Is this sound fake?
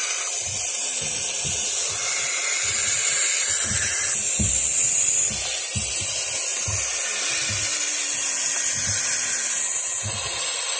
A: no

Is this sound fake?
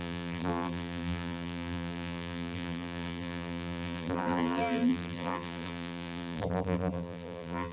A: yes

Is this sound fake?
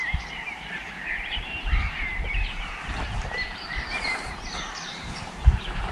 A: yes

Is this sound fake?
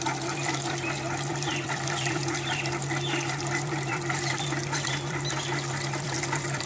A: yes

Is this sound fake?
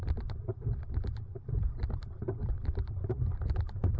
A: no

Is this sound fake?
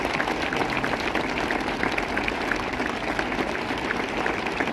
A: no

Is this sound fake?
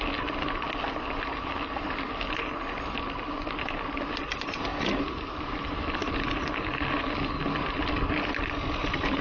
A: no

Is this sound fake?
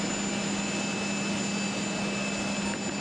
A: no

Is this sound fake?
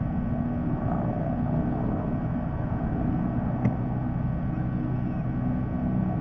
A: no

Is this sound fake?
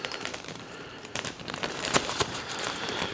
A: yes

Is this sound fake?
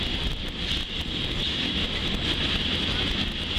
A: no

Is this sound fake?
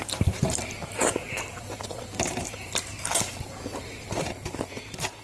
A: yes